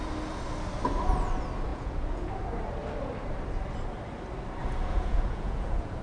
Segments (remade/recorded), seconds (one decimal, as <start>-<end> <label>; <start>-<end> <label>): 0.0-1.7 recorded; 1.7-2.3 remade; 2.3-4.6 recorded; 4.6-6.0 remade